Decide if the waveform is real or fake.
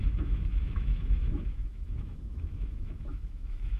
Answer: fake